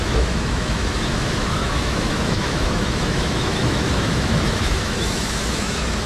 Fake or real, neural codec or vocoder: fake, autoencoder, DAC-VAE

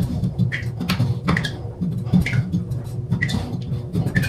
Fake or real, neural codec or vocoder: real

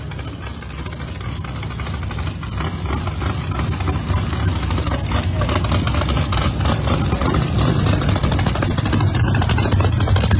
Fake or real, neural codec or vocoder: real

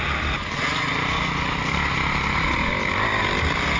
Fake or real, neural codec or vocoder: real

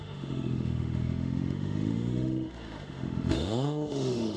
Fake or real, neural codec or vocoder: fake, autoencoder, DAC-VAE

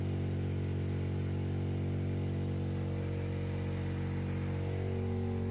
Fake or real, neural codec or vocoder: real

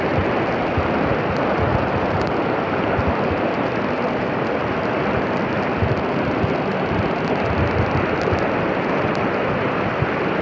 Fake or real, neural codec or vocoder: real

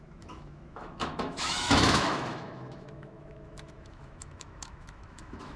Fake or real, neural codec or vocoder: fake, autoencoder, DAC-VAE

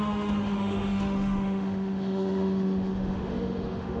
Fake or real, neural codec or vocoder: fake, autoencoder, DAC-VAE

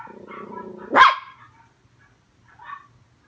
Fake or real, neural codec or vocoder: real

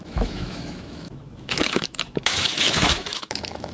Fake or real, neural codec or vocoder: fake, autoencoder, DAC-VAE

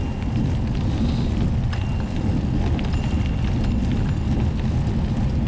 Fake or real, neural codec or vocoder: real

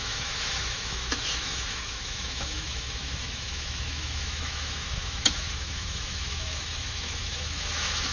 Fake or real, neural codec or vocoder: fake, autoencoder, DAC-VAE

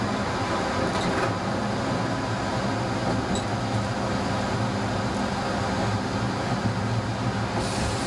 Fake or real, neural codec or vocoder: real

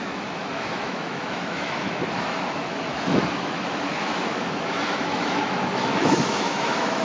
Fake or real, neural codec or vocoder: fake, autoencoder, DAC-VAE